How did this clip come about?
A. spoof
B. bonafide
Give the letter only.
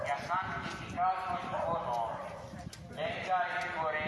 B